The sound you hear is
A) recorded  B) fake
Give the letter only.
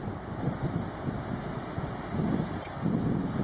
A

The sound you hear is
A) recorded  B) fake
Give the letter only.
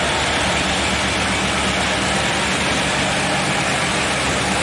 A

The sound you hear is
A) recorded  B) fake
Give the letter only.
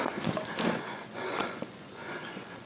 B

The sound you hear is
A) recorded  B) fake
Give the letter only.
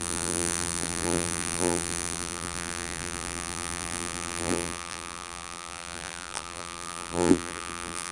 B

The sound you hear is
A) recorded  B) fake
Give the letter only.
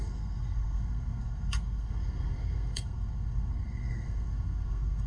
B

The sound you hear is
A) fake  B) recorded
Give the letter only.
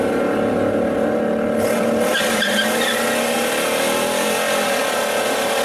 B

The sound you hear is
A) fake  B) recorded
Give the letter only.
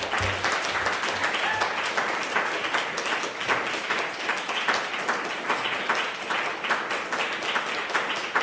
B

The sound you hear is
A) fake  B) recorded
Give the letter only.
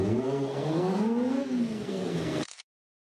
A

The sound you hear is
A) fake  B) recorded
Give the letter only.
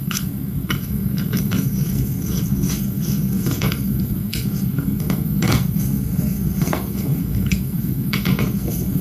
A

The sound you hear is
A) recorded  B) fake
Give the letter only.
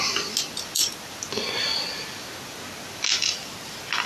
A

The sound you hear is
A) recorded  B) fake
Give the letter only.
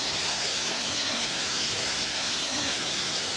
B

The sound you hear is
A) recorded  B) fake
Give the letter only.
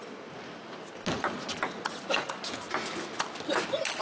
A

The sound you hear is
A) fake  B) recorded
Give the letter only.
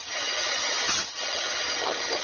A